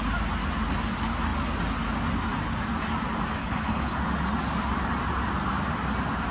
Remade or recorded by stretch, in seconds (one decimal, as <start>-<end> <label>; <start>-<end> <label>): 0.0-3.4 recorded; 3.4-4.0 remade; 4.0-6.3 recorded